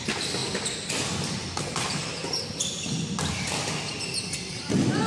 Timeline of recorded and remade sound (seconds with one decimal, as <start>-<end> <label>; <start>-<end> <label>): 0.0-5.1 recorded